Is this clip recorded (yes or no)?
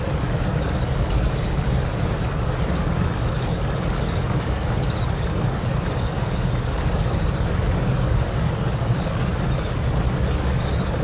no